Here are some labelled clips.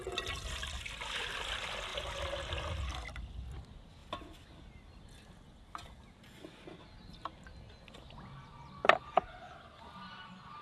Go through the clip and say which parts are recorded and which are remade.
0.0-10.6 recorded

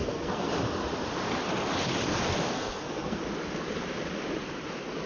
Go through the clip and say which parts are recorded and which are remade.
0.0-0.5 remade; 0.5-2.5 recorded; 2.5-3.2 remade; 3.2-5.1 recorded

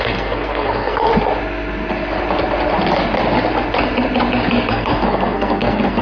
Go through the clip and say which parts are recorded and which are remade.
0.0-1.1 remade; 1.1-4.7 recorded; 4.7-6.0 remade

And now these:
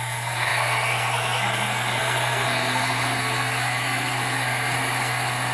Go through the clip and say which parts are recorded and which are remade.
0.0-5.5 remade

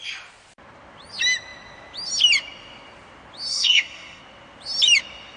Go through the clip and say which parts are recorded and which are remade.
0.0-3.5 recorded; 3.5-4.2 remade; 4.2-5.4 recorded

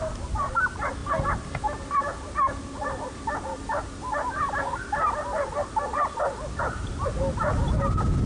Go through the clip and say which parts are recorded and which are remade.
0.0-8.3 recorded

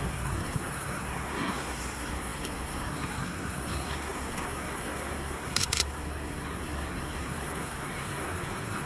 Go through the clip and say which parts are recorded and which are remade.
0.0-8.9 remade